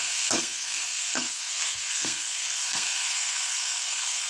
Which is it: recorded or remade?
remade